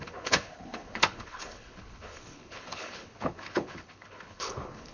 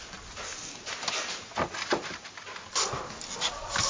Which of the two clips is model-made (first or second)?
first